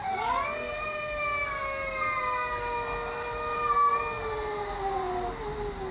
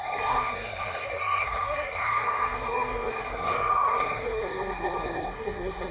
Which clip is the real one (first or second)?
first